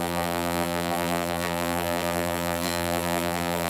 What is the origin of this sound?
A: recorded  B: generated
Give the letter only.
B